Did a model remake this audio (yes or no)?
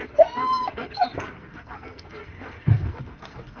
yes